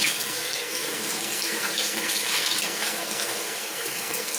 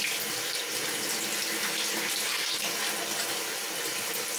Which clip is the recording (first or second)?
second